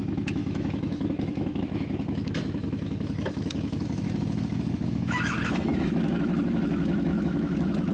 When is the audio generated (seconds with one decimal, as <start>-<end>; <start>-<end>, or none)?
0.0-7.9

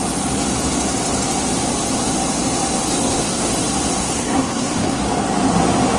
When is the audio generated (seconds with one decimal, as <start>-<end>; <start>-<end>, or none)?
2.9-3.5; 4.0-5.0

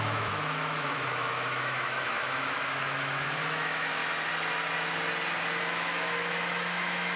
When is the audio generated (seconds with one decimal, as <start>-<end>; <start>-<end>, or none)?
0.0-4.0; 5.6-7.2

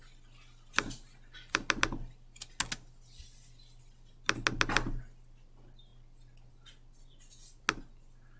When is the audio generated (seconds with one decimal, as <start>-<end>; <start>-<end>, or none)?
none